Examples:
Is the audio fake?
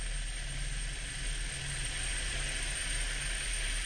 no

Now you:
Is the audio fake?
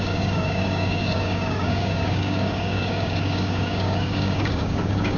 yes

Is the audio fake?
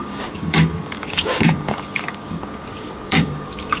yes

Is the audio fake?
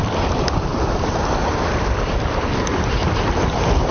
no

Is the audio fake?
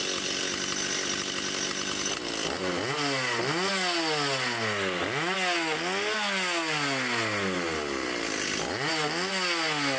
no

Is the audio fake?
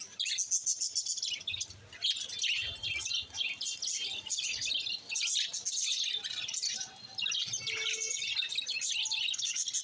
no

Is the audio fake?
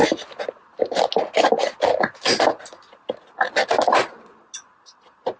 no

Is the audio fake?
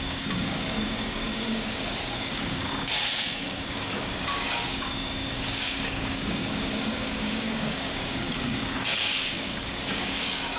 yes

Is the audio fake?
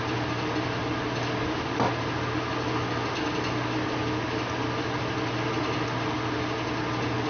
no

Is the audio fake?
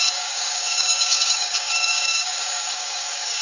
yes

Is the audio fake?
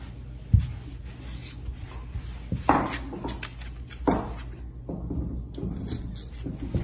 no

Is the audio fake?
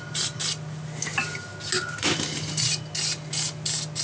no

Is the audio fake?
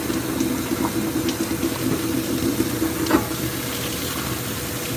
no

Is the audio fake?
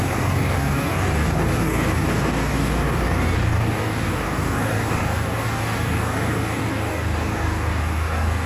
yes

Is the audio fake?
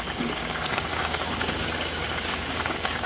yes